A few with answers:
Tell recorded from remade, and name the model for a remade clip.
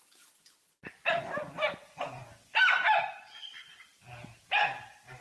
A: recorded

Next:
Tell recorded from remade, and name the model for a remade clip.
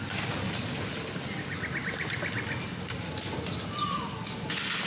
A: recorded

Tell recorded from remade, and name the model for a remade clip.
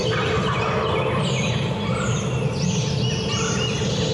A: recorded